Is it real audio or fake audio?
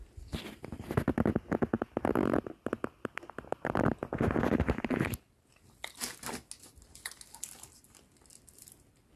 real